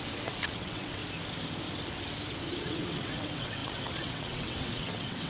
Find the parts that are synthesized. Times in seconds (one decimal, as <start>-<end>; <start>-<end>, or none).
0.0-1.0; 2.6-5.3